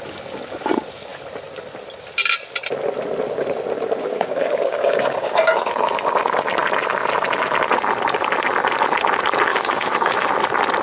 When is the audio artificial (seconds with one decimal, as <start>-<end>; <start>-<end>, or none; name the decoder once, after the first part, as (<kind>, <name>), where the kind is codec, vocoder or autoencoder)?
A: 4.0-5.7 (codec, DAC); 9.5-10.3